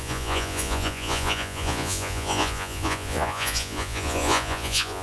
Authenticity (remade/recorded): remade